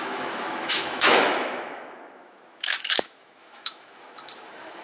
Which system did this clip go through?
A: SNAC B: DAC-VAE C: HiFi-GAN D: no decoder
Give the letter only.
B